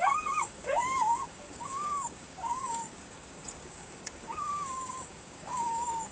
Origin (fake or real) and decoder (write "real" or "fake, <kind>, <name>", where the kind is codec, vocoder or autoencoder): fake, codec, DAC